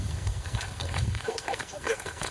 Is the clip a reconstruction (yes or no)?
yes